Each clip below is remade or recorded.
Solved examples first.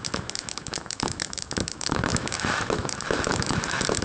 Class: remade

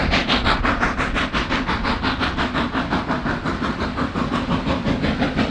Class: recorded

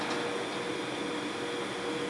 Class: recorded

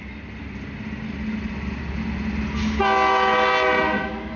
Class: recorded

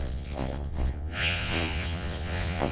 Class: remade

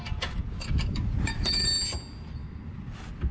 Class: recorded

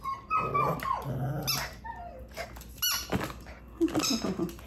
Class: recorded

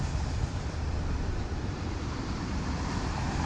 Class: remade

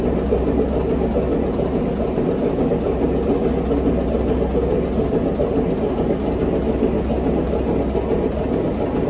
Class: recorded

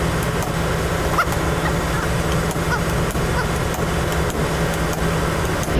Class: recorded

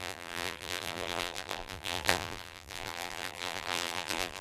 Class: remade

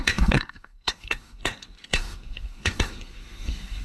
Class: remade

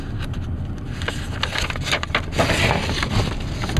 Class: recorded